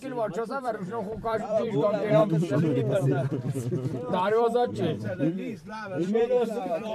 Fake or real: fake